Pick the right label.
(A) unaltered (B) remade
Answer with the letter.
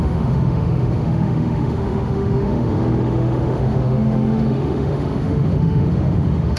B